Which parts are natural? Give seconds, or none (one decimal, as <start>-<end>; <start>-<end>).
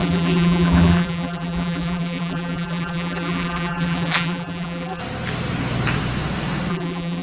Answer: 5.0-6.7